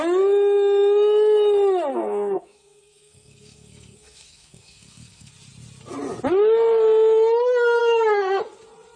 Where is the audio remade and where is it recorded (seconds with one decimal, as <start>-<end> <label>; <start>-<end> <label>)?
0.0-1.9 recorded; 1.9-5.3 remade; 5.3-7.8 recorded; 7.8-8.4 remade; 8.4-9.0 recorded